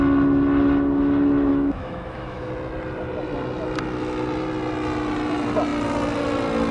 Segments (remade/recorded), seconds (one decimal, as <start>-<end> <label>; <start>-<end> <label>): 0.0-1.5 recorded; 1.5-2.5 remade; 2.5-6.7 recorded